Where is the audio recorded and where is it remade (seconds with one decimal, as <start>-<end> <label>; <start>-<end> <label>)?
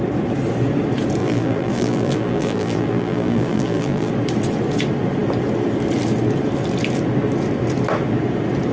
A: 0.0-1.2 recorded; 1.2-4.1 remade; 4.1-8.7 recorded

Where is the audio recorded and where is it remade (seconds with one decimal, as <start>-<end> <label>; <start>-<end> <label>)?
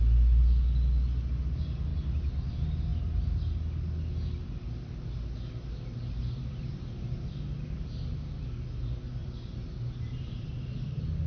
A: 0.0-9.2 recorded; 9.2-10.5 remade; 10.5-11.3 recorded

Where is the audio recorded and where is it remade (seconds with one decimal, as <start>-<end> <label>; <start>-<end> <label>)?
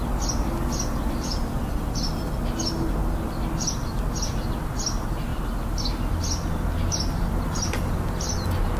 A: 0.0-8.8 recorded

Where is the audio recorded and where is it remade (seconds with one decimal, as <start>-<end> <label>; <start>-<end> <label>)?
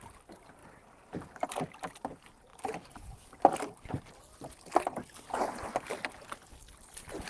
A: 0.0-7.3 recorded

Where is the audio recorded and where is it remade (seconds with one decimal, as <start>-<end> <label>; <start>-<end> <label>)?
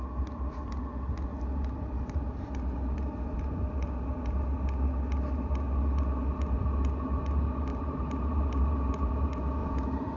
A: 0.0-1.3 recorded; 1.3-3.4 remade; 3.4-7.7 recorded; 7.7-9.1 remade; 9.1-9.6 recorded; 9.6-10.2 remade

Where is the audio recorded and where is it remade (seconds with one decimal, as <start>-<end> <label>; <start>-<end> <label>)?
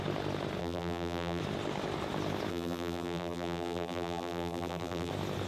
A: 0.0-0.6 recorded; 0.6-1.4 remade; 1.4-2.5 recorded; 2.5-5.1 remade; 5.1-5.5 recorded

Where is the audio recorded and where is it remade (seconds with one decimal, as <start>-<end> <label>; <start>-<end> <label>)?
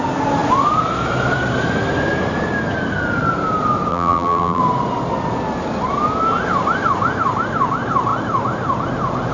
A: 0.0-3.9 recorded; 3.9-4.6 remade; 4.6-9.3 recorded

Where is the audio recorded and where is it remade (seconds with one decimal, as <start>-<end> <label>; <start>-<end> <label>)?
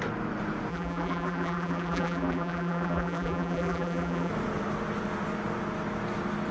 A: 0.0-0.7 recorded; 0.7-4.3 remade; 4.3-6.5 recorded